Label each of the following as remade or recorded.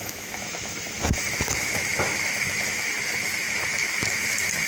remade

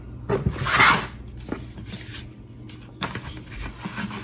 recorded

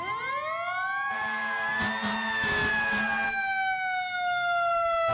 recorded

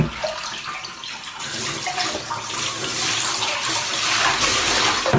recorded